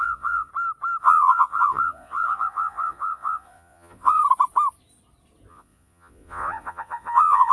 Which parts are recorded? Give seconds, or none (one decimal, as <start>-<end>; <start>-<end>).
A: 0.5-1.0; 4.2-5.5